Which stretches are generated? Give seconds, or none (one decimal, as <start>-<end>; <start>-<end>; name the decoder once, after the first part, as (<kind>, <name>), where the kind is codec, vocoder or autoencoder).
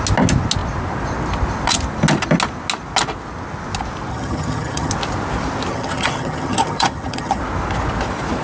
4.1-4.9 (vocoder, HiFi-GAN); 5.7-7.4